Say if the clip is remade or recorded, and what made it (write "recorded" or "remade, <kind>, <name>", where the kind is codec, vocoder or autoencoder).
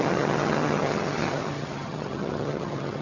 remade, vocoder, HiFi-GAN